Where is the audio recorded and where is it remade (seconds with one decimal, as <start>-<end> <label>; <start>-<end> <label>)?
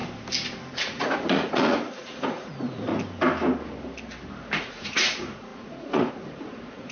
0.0-0.8 recorded; 0.8-2.9 remade; 2.9-4.6 recorded; 4.6-6.9 remade